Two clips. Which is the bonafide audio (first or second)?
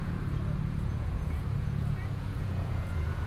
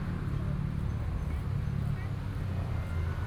second